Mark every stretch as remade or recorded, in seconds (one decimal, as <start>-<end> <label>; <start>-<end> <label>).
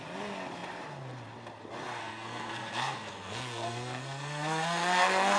0.0-2.0 recorded; 2.0-5.4 remade